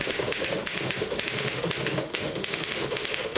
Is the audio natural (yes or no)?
no